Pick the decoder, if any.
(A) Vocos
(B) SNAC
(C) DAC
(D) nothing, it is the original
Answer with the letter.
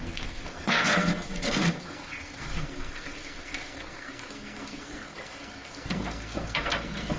B